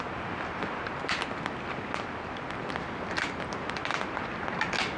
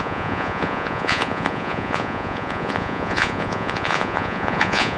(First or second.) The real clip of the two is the first